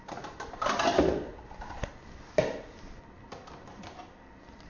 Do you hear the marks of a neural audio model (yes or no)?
no